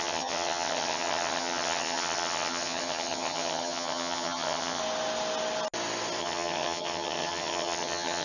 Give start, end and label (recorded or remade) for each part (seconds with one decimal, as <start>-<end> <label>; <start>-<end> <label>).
0.0-4.8 remade; 4.8-6.2 recorded; 6.2-8.2 remade